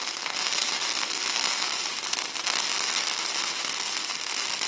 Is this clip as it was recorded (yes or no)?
yes